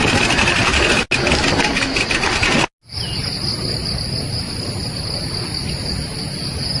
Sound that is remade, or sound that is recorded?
recorded